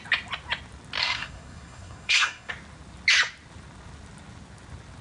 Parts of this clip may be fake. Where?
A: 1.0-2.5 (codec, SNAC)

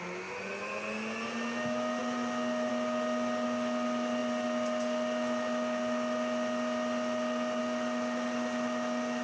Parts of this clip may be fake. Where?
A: none

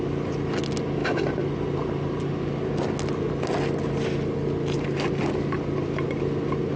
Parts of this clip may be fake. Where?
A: none

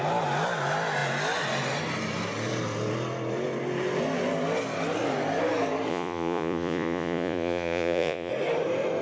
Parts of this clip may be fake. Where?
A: 5.9-8.3 (vocoder, Vocos)

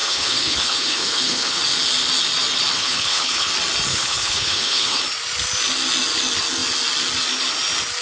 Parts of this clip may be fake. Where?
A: 0.0-1.6 (codec, HILCodec); 2.7-3.5; 3.9-5.0

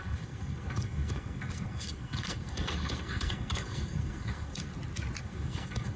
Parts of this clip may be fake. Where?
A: 0.0-4.7 (codec, SNAC); 5.2-6.0

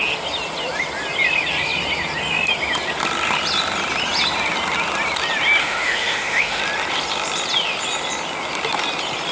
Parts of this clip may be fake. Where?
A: 5.6-6.6 (autoencoder, DAC-VAE)